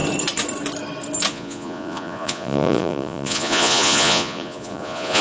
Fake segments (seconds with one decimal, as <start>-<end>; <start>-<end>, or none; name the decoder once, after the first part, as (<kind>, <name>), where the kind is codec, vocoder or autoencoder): 1.3-5.2 (vocoder, Vocos)